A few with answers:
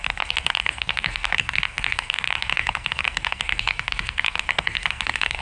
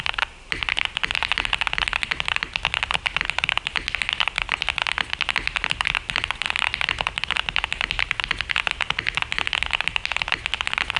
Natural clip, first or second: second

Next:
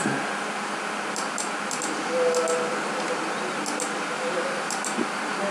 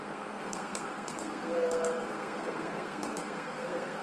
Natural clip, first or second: first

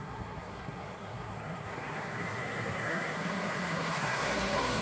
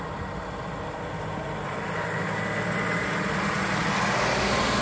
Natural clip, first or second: second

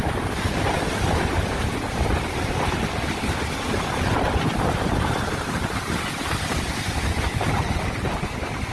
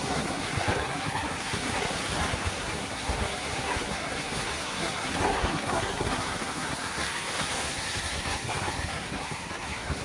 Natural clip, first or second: first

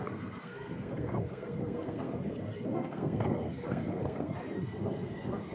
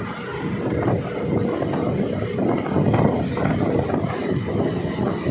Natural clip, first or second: second